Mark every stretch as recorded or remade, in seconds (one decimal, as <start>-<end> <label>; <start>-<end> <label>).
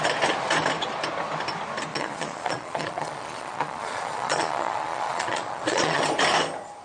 0.0-1.9 recorded; 1.9-6.0 remade; 6.0-6.8 recorded